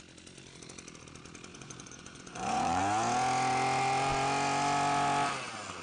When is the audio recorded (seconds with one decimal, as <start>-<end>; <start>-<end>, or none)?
0.0-1.5; 2.8-5.8